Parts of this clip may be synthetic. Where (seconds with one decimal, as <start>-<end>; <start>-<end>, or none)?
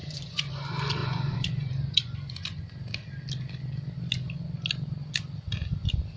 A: 0.0-0.5; 1.0-2.6